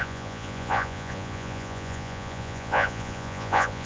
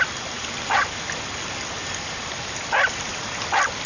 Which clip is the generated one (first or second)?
first